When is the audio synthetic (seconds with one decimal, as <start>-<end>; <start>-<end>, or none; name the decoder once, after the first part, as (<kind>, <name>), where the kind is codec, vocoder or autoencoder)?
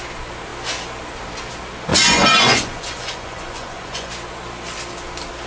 1.9-4.1 (vocoder, Vocos)